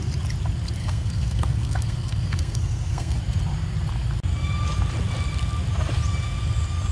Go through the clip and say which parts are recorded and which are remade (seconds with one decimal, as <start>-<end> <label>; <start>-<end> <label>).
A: 0.0-0.8 recorded; 0.8-3.2 remade; 3.2-6.9 recorded